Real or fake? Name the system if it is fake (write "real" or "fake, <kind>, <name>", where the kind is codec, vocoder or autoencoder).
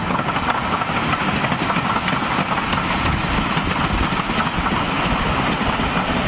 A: real